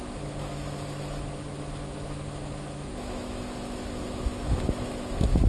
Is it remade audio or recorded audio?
remade